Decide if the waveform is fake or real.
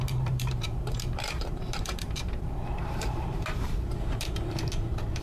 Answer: fake